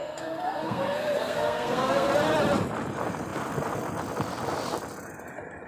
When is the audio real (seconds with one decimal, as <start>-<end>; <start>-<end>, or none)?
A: 2.1-5.7